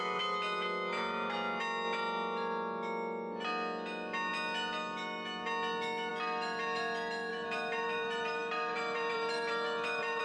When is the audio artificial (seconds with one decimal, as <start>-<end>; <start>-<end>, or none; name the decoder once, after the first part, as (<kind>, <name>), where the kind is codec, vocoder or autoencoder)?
7.3-10.2 (vocoder, BigVGAN v2)

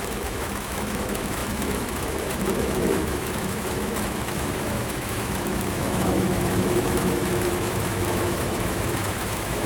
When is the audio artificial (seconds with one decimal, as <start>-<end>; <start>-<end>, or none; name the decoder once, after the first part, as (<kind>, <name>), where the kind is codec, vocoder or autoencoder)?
0.0-9.7 (autoencoder, DAC-VAE)

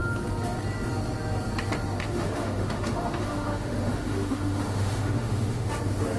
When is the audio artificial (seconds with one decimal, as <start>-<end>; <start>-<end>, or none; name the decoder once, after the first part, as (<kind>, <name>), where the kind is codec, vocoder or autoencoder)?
2.0-5.7 (autoencoder, DAC-VAE)

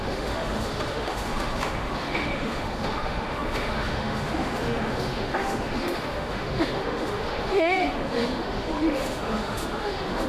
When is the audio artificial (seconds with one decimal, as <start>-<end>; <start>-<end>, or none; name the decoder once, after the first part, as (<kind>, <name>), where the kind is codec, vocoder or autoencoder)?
0.0-10.3 (autoencoder, DAC-VAE)

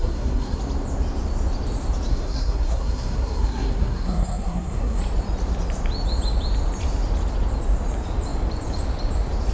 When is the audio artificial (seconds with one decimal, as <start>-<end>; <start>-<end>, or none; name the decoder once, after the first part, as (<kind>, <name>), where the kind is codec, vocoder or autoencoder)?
0.0-0.6 (codec, SNAC); 2.1-5.0